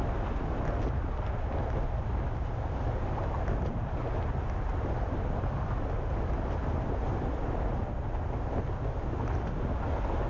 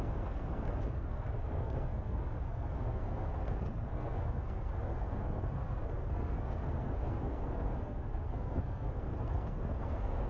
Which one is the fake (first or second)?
second